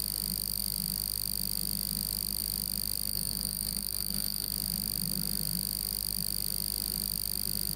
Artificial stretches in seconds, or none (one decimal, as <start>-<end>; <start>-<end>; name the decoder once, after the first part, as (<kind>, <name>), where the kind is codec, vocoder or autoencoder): 3.1-4.5 (codec, DAC)